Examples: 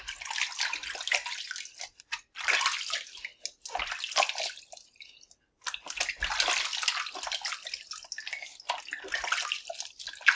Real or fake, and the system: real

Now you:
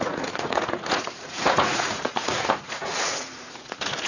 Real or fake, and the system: fake, vocoder, Vocos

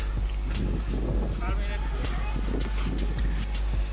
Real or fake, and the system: real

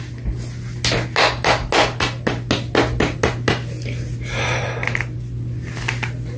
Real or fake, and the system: real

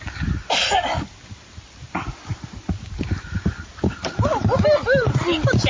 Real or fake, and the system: real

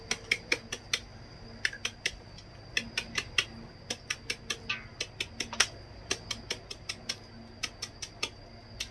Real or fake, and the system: real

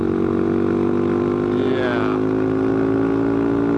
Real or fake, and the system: real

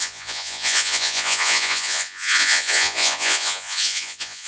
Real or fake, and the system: fake, vocoder, Vocos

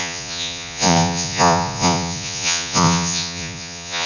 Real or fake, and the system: fake, vocoder, Vocos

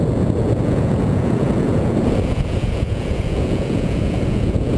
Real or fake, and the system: fake, vocoder, Vocos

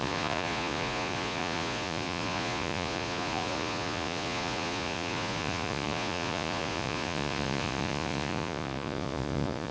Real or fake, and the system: fake, vocoder, Vocos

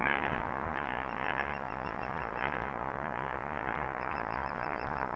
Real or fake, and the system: fake, vocoder, Vocos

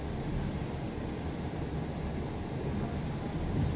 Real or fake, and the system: real